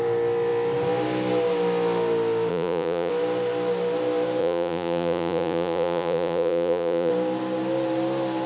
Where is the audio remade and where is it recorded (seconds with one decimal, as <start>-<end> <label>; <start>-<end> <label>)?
0.0-2.5 recorded; 2.5-3.1 remade; 3.1-4.4 recorded; 4.4-7.1 remade; 7.1-8.5 recorded